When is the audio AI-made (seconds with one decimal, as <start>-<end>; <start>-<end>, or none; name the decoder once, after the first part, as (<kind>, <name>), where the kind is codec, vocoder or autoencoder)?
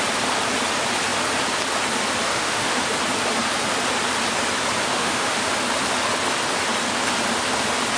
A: 2.3-2.8 (autoencoder, DAC-VAE); 4.8-5.5